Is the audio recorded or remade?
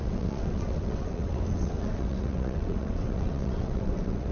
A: remade